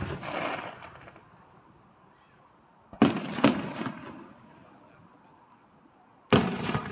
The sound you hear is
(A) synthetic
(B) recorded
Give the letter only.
B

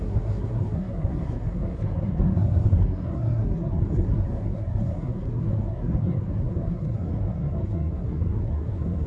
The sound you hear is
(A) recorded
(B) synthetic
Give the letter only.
B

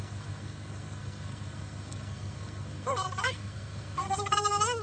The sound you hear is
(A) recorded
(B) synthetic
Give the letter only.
B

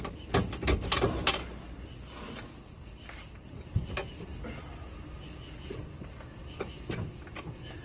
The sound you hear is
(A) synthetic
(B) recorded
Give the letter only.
B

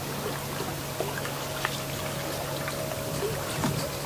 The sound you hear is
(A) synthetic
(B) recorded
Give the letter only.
B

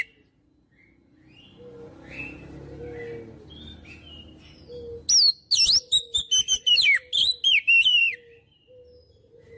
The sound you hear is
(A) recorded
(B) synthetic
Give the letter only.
A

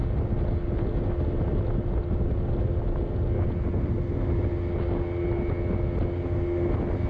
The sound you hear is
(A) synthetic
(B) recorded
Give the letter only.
B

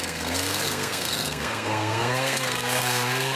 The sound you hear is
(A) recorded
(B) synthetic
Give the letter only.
B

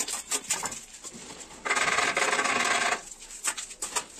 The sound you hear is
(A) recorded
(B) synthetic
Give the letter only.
A